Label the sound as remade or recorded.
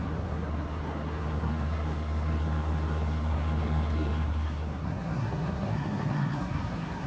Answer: remade